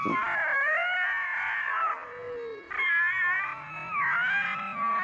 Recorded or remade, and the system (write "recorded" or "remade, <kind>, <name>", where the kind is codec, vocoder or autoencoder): recorded